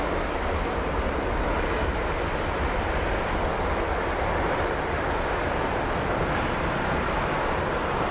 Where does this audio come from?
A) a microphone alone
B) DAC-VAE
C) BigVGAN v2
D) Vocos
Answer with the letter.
A